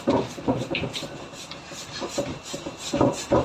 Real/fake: real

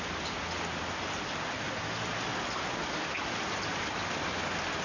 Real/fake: real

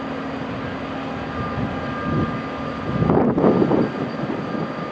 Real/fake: real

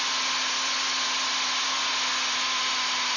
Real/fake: real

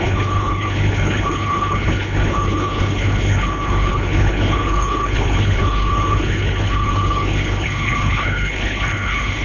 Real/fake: fake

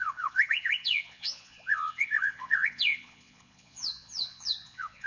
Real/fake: fake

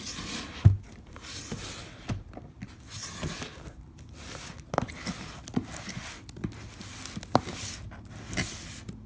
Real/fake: real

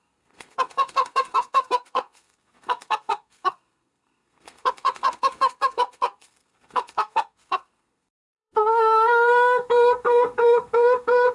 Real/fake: fake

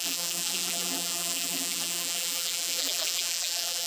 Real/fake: fake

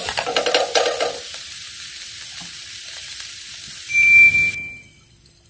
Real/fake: real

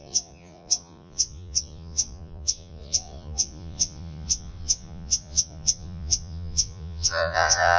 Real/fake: fake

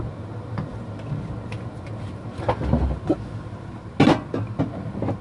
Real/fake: real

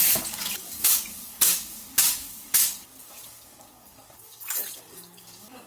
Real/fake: fake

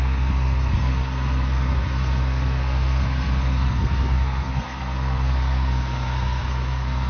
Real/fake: fake